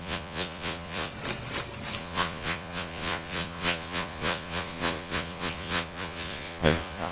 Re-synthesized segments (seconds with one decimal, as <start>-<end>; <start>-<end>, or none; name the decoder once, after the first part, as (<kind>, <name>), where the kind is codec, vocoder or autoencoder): 0.0-1.1 (vocoder, Vocos); 2.0-7.1